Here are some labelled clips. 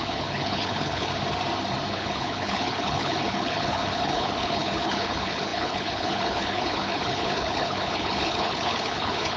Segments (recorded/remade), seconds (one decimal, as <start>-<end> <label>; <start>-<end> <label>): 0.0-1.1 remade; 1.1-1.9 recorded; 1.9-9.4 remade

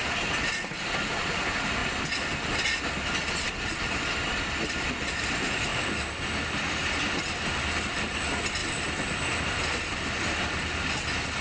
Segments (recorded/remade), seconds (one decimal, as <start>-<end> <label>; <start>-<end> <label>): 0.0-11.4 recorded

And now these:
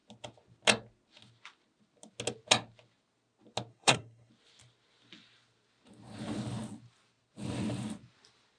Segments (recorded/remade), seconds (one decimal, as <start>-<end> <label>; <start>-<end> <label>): 0.0-3.7 recorded; 3.7-4.3 remade; 4.3-8.6 recorded